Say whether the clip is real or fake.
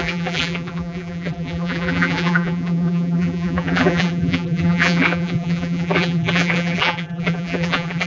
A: fake